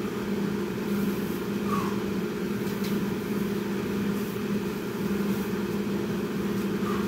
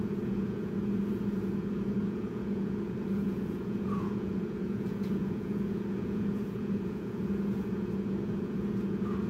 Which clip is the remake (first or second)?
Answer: second